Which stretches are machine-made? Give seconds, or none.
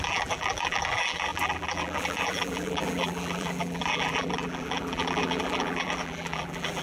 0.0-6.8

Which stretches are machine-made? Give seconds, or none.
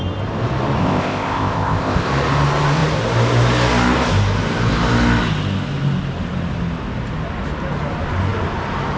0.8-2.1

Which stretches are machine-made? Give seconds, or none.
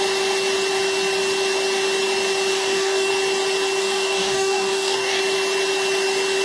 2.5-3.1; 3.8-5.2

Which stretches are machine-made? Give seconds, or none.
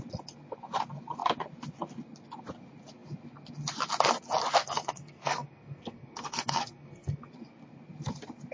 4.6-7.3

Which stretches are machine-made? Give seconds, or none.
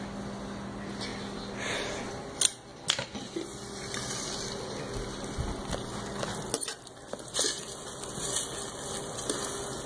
none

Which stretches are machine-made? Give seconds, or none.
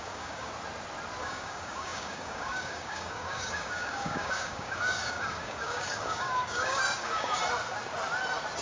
0.0-0.5; 1.2-7.4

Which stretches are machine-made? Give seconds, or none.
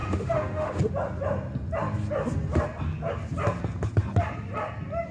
0.0-0.8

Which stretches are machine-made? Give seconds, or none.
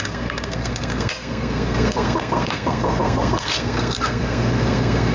0.0-5.1